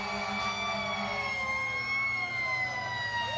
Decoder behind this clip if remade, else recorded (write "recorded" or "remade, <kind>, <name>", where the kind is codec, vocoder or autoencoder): recorded